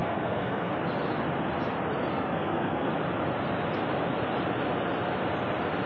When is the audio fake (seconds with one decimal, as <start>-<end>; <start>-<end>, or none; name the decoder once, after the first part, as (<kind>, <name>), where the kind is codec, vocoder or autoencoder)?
0.0-0.7 (codec, SNAC); 2.1-2.9